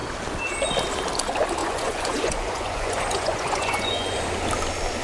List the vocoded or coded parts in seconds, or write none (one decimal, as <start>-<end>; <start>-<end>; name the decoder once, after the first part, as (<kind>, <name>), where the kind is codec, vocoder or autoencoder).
1.6-4.2 (vocoder, Vocos)